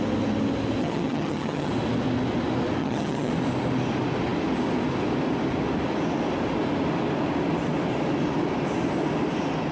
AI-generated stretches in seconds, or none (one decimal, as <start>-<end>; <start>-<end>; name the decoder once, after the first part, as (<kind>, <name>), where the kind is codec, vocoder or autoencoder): 0.8-1.7 (vocoder, HiFi-GAN); 2.8-3.3